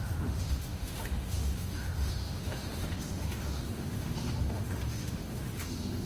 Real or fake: fake